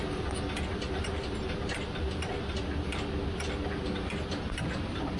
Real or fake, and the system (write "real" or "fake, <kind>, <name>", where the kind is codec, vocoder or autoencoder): real